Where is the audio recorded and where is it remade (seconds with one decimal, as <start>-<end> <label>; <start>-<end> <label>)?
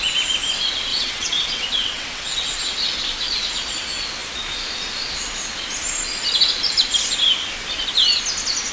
0.0-0.9 recorded; 0.9-2.5 remade; 2.5-8.7 recorded